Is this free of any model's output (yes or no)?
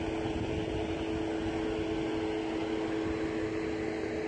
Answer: yes